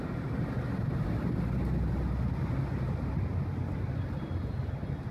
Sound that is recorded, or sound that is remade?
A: recorded